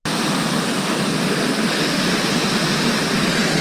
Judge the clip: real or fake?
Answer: real